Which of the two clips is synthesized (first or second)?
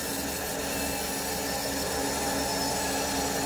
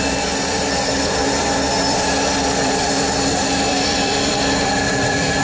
second